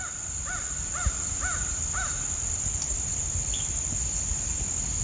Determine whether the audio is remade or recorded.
recorded